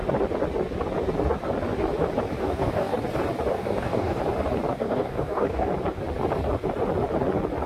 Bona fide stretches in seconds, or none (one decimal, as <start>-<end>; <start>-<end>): 0.0-2.4; 3.0-3.5; 4.2-4.7; 5.7-7.7